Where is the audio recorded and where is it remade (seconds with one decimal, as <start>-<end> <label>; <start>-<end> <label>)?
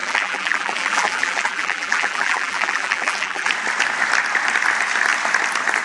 0.0-3.5 remade; 3.5-5.8 recorded